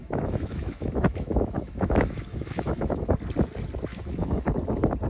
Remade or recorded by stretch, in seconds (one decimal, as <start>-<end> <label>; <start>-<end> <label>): 0.0-3.1 remade; 3.1-3.9 recorded; 3.9-4.5 remade; 4.5-5.1 recorded